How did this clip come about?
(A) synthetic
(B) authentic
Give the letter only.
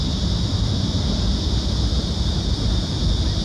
B